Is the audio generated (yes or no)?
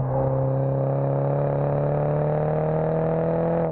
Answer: no